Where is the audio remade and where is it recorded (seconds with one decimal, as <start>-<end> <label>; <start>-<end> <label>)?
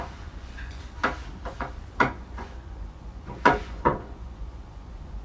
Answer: 0.0-1.0 remade; 1.0-1.5 recorded; 1.5-5.2 remade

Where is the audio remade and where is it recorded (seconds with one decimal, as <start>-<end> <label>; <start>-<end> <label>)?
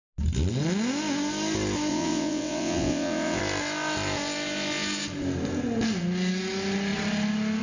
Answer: 0.0-1.9 recorded; 1.9-3.4 remade; 3.4-7.6 recorded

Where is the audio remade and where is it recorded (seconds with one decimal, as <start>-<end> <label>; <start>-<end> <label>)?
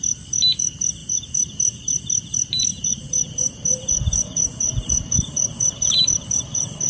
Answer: 0.0-1.0 recorded; 1.0-2.0 remade; 2.0-2.7 recorded; 2.7-6.9 remade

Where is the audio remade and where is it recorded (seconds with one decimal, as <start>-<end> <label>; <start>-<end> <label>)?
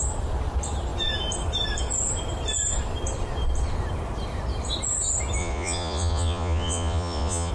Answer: 0.0-5.4 recorded; 5.4-7.5 remade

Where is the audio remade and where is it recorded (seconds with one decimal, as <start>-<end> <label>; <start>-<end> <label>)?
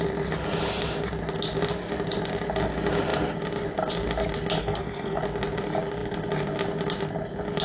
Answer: 0.0-4.6 recorded; 4.6-5.2 remade; 5.2-7.6 recorded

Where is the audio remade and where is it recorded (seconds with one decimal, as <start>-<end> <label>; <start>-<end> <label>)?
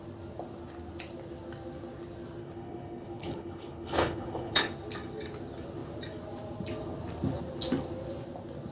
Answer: 0.0-2.4 recorded; 2.4-4.7 remade; 4.7-8.7 recorded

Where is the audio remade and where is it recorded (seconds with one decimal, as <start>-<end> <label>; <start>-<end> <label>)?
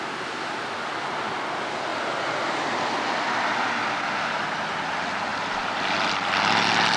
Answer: 0.0-5.3 recorded; 5.3-6.1 remade; 6.1-7.0 recorded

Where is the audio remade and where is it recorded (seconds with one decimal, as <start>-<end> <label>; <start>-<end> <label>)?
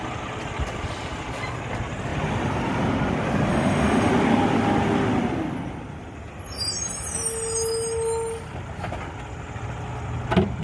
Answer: 0.0-3.5 recorded; 3.5-4.1 remade; 4.1-10.6 recorded